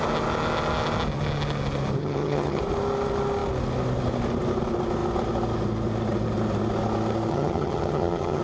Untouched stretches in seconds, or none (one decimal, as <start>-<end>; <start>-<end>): 0.0-2.0; 2.6-7.3

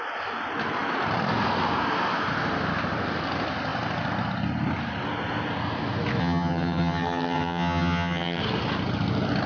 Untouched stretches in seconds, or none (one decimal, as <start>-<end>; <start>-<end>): 0.0-6.2; 8.4-9.5

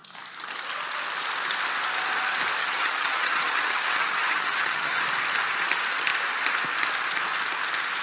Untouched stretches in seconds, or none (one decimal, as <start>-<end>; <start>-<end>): 0.0-2.6; 5.0-8.0